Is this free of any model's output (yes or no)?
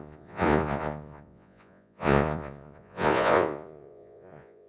no